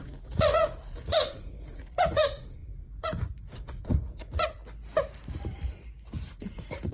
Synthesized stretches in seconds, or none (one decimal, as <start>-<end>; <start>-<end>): 0.0-4.6; 6.3-6.9